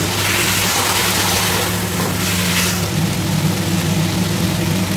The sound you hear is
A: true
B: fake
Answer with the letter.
A